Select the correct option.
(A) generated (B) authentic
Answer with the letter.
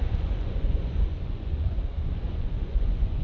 A